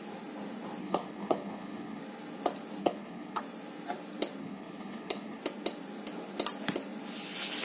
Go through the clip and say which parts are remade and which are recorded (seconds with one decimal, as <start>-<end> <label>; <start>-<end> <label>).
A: 0.0-0.8 recorded; 0.8-2.0 remade; 2.0-2.8 recorded; 2.8-3.4 remade; 3.4-4.4 recorded; 4.4-5.4 remade; 5.4-7.6 recorded